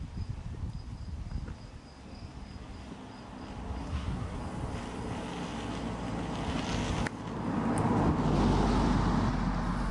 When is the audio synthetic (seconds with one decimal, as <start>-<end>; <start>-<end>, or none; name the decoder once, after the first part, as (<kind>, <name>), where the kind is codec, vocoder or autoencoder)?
3.8-4.4 (codec, SNAC)